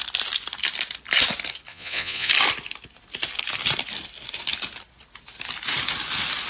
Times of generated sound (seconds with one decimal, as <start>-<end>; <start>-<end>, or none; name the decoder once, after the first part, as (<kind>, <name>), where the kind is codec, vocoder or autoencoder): 1.7-2.3 (vocoder, Vocos)